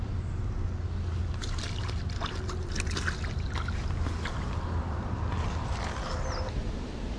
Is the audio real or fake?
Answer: real